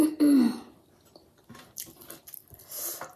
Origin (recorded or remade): recorded